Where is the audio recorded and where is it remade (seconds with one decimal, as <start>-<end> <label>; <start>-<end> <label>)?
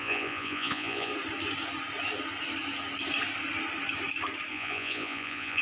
0.0-1.1 remade; 1.1-4.5 recorded; 4.5-5.6 remade